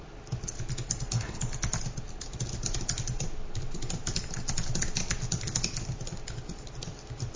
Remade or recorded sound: recorded